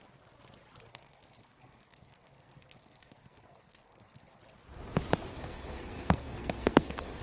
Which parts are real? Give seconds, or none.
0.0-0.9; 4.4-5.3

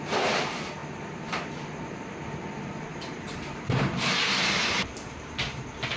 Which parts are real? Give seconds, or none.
0.0-2.9; 5.6-6.0

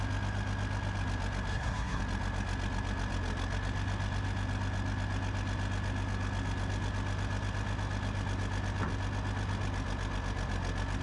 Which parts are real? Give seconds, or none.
0.0-1.5; 2.0-11.0

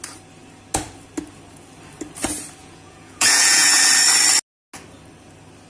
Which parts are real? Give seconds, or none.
0.0-2.6; 3.9-5.7

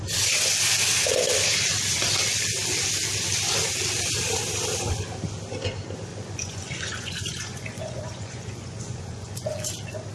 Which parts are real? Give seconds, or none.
0.0-6.1; 9.7-10.1